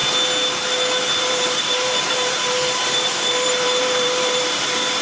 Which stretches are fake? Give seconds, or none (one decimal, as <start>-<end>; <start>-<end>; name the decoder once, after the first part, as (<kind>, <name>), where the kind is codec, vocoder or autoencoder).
1.2-5.0 (vocoder, BigVGAN v2)